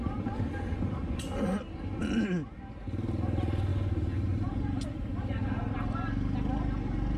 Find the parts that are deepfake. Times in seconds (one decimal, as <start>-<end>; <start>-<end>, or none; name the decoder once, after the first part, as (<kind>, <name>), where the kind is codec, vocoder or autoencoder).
none